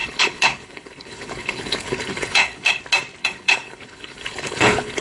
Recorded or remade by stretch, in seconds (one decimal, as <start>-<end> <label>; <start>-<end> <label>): 0.0-2.8 remade; 2.8-3.2 recorded; 3.2-5.0 remade

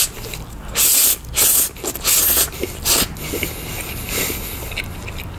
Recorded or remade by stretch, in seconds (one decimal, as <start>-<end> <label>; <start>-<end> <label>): 0.0-2.2 recorded; 2.2-4.5 remade; 4.5-5.4 recorded

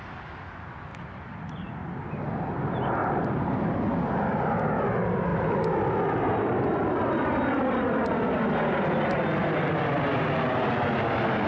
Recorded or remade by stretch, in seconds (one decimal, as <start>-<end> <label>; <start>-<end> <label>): 0.0-0.9 recorded; 0.9-1.7 remade; 1.7-3.0 recorded; 3.0-3.6 remade; 3.6-11.5 recorded

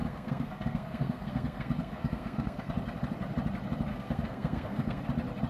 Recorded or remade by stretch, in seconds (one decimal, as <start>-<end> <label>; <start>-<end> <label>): 0.0-2.7 remade; 2.7-3.9 recorded; 3.9-5.0 remade; 5.0-5.5 recorded